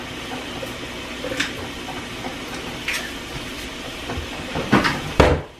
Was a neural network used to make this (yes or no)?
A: no